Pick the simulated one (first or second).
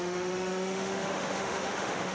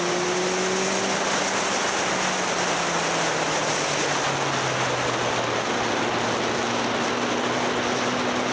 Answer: first